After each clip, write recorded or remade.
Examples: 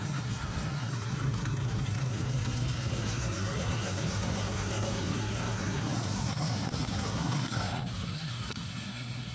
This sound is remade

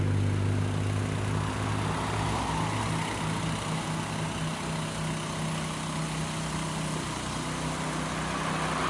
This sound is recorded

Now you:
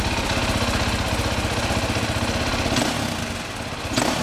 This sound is recorded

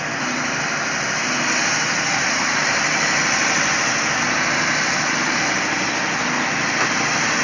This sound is recorded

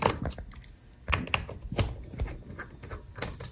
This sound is recorded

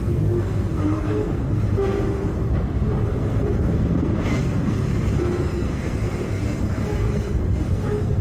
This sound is remade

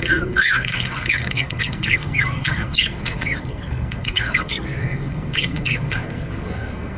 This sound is remade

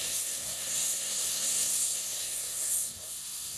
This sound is remade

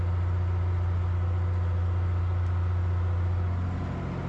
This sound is recorded